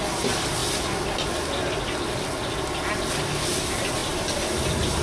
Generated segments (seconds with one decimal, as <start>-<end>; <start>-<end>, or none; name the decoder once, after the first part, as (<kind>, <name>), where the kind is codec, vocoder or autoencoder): none